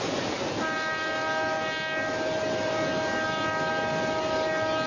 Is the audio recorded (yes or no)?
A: yes